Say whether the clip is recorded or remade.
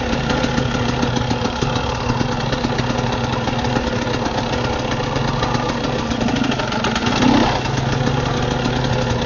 recorded